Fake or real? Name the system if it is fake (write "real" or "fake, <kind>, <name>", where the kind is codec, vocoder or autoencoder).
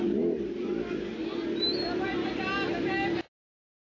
real